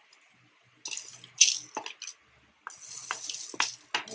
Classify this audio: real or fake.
real